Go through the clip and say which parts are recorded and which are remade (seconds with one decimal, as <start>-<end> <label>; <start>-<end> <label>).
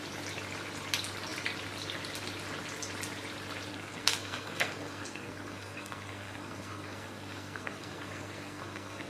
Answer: 0.0-3.7 recorded; 3.7-9.1 remade